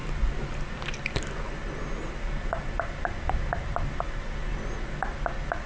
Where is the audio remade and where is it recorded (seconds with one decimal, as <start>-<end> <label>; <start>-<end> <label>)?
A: 0.0-5.7 recorded